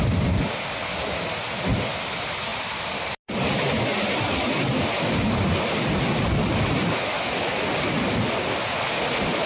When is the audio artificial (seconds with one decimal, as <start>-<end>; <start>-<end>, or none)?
none